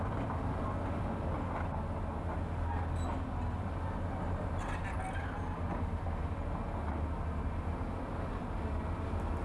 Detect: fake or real real